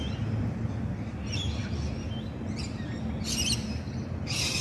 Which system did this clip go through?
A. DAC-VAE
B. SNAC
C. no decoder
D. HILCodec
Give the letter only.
C